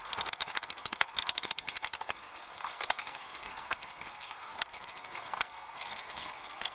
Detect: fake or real fake